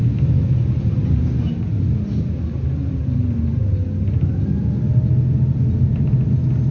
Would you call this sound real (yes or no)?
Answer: yes